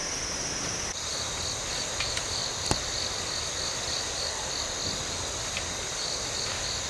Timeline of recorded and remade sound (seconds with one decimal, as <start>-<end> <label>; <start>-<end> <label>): 0.0-0.6 recorded; 0.6-2.4 remade; 2.4-6.4 recorded; 6.4-6.9 remade